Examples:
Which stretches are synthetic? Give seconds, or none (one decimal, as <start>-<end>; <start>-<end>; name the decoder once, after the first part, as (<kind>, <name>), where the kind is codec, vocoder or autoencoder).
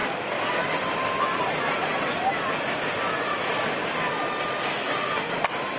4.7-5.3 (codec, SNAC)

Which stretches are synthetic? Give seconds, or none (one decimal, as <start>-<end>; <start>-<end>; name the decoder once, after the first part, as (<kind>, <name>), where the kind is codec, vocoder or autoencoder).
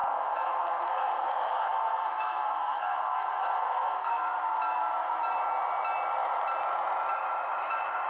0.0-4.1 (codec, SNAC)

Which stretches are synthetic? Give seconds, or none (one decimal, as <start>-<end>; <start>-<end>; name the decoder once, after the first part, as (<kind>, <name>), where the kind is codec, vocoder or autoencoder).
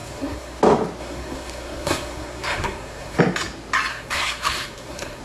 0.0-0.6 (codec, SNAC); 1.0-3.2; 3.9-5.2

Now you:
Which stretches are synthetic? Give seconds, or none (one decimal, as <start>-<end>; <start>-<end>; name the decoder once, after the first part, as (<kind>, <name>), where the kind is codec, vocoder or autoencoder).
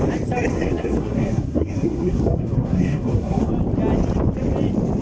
0.5-3.5 (codec, SNAC)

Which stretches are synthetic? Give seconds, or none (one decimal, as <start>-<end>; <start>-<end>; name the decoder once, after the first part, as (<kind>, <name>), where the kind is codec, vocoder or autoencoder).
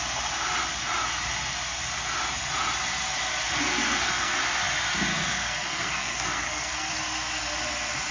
3.7-4.3 (codec, SNAC); 5.1-6.9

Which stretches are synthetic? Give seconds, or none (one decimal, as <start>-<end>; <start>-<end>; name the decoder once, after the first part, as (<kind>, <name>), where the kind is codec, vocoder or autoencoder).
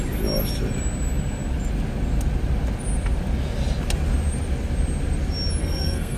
5.6-6.2 (codec, SNAC)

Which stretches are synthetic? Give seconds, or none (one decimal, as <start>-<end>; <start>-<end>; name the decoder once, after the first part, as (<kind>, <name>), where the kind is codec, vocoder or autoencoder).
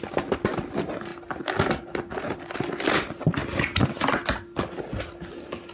none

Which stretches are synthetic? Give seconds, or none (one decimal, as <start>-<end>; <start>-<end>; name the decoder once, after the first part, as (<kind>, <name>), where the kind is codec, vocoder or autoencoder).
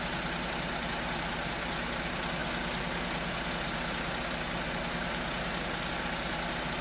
none